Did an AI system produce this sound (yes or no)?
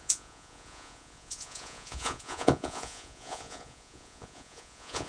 yes